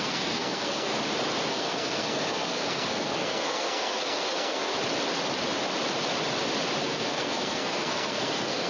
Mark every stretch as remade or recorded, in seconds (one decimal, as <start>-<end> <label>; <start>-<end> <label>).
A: 0.0-0.9 remade; 0.9-1.5 recorded; 1.5-4.7 remade; 4.7-6.8 recorded; 6.8-8.7 remade